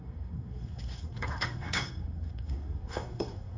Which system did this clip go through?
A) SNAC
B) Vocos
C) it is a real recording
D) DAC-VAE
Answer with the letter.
A